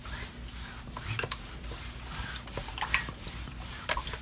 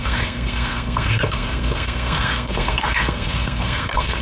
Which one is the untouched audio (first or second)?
first